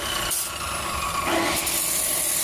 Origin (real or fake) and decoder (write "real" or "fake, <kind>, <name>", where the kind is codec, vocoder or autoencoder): real